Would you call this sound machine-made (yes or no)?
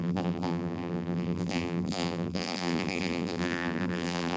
yes